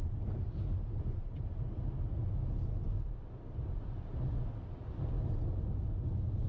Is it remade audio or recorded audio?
recorded